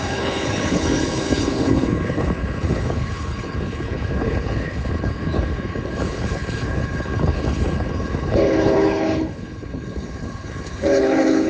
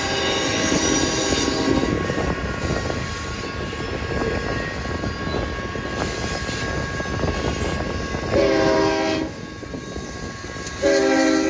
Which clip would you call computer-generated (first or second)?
first